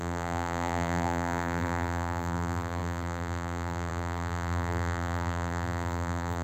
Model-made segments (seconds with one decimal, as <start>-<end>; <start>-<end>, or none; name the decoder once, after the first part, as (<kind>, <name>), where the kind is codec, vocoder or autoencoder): 0.0-6.4 (vocoder, BigVGAN v2)